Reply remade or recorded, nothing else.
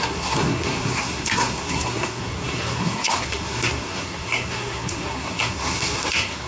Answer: remade